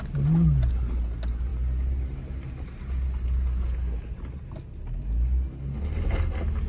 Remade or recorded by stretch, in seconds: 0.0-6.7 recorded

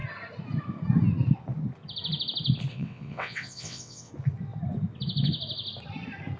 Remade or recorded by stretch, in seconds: 0.0-2.7 recorded; 2.7-4.1 remade; 4.1-6.4 recorded

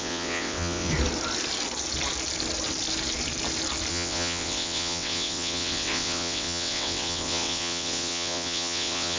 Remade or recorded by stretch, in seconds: 0.0-0.9 remade; 0.9-3.9 recorded; 3.9-9.2 remade

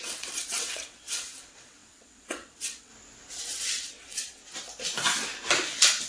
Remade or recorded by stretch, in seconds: 0.0-2.9 remade; 2.9-3.4 recorded; 3.4-4.4 remade; 4.4-6.1 recorded

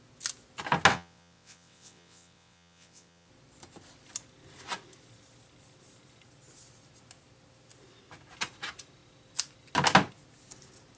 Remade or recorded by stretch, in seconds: 0.0-0.9 recorded; 0.9-3.3 remade; 3.3-11.0 recorded